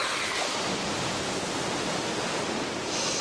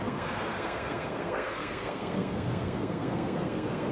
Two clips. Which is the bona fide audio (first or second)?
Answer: first